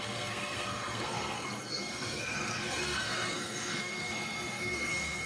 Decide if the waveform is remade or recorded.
remade